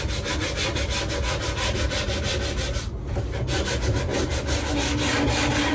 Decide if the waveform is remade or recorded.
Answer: recorded